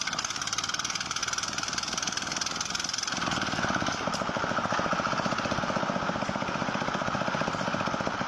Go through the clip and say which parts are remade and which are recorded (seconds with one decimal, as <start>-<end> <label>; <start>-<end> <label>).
0.0-8.3 recorded